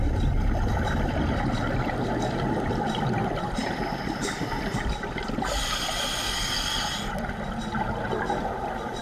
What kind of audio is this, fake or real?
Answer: real